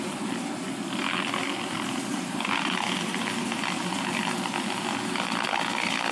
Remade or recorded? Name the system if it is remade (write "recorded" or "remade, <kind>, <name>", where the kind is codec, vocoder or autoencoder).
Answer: remade, vocoder, BigVGAN v2